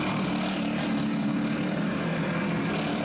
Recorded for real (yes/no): yes